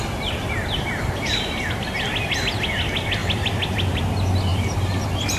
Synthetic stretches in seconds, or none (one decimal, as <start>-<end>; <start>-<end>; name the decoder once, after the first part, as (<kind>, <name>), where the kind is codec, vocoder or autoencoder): 3.2-4.0 (vocoder, BigVGAN v2); 4.5-5.4